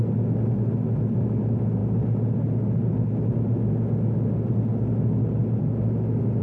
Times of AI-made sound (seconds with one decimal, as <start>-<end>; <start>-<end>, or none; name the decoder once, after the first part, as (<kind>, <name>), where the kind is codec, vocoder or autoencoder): none

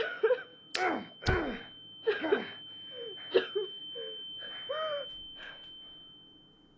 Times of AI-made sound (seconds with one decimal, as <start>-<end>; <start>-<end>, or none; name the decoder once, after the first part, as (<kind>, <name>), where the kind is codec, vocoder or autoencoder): none

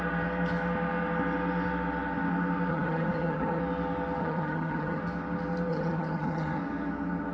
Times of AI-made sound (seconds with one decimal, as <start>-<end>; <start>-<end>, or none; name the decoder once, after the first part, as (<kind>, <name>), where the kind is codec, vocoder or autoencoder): 2.7-3.6 (vocoder, HiFi-GAN); 4.2-5.0; 5.7-6.6

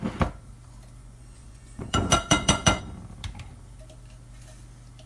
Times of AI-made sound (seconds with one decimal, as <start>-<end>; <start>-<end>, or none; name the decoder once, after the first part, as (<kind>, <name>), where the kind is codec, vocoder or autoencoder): 1.0-2.8 (vocoder, Vocos)

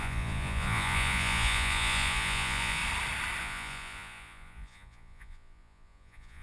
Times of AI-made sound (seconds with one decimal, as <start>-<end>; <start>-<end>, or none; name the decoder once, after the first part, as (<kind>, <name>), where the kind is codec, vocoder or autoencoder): 0.0-2.8 (vocoder, Vocos); 3.4-6.4

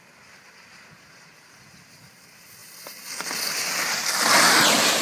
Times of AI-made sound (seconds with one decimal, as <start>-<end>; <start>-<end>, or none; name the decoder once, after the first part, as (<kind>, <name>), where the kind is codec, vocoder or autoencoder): none